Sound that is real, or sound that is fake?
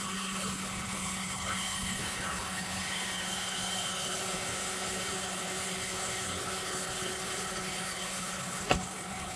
fake